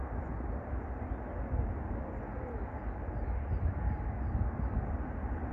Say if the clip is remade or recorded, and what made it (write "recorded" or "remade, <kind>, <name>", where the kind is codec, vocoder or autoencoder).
recorded